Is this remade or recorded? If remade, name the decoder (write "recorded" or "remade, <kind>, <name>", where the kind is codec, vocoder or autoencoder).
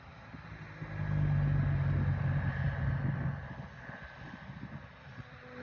recorded